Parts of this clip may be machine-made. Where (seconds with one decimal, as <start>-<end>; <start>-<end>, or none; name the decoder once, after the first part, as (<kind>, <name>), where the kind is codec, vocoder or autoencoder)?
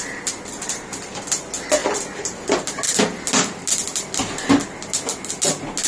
none